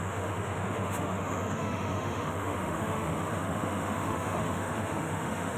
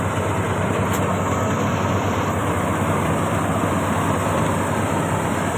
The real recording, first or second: second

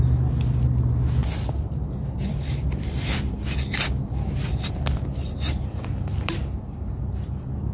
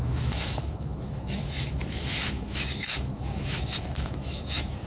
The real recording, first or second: first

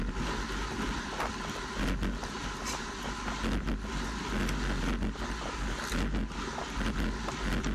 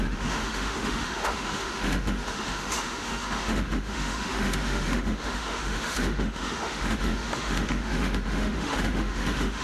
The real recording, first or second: first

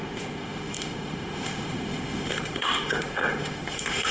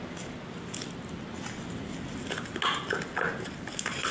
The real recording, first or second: second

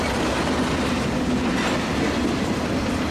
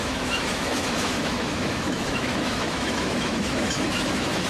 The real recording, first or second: first